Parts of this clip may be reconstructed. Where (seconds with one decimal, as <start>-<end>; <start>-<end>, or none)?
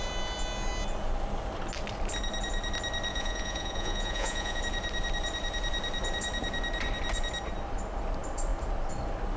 3.1-4.6